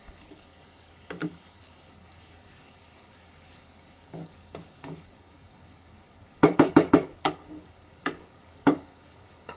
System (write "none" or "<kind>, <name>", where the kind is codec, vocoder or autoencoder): codec, DAC